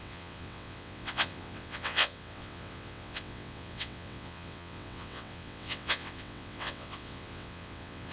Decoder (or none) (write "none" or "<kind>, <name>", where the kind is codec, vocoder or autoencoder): vocoder, WaveNeXt